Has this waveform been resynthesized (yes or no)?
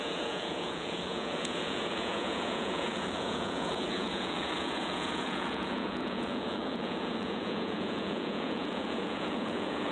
yes